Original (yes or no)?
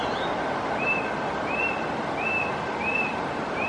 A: yes